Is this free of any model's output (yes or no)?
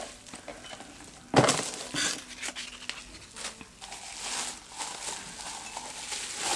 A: yes